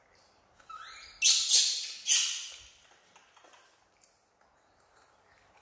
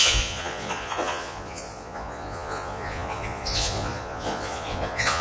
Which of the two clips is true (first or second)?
first